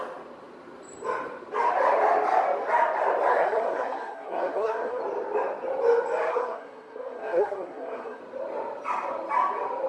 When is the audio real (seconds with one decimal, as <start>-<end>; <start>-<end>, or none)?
0.0-3.3; 5.0-6.3; 8.2-9.9

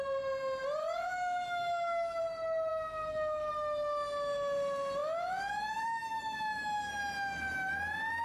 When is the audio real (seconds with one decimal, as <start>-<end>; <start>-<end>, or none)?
0.0-0.8; 2.2-2.7; 3.5-5.0; 6.9-8.2

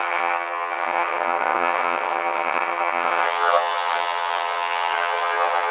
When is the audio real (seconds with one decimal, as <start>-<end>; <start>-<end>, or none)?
none